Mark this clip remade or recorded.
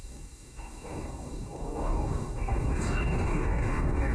remade